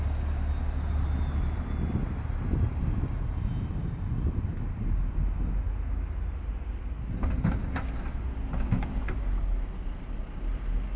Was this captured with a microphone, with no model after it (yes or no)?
yes